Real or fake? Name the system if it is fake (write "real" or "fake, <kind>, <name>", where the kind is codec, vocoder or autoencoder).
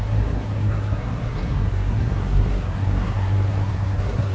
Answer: fake, codec, SNAC